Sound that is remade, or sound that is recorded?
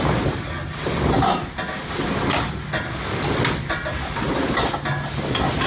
recorded